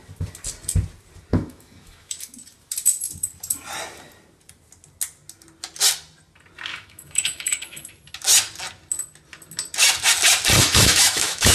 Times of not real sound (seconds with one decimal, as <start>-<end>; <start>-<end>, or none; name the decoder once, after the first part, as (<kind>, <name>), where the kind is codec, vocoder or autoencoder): 1.3-2.2 (autoencoder, DAC-VAE); 6.7-7.9; 10.6-11.5